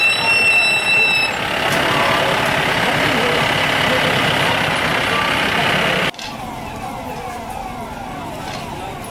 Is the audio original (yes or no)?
yes